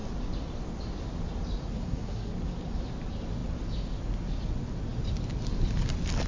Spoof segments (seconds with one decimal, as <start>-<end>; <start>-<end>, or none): 1.7-2.3